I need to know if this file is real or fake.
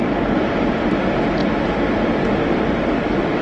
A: real